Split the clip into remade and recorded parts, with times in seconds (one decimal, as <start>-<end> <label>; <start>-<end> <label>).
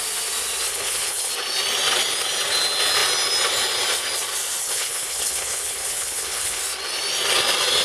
0.0-0.7 recorded; 0.7-1.3 remade; 1.3-4.6 recorded; 4.6-6.6 remade; 6.6-7.8 recorded